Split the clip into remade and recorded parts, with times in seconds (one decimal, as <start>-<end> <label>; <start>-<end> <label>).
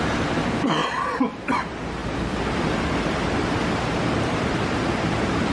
0.0-5.5 remade